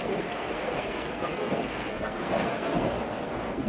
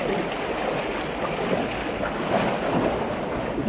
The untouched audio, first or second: second